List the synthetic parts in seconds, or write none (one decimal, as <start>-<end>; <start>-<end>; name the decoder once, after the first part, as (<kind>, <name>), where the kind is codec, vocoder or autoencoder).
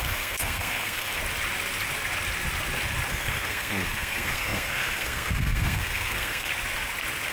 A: 0.0-1.2 (codec, SNAC); 3.1-6.5